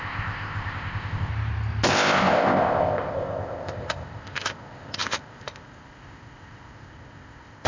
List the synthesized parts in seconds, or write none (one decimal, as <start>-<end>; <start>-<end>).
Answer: 0.0-1.3; 1.9-7.7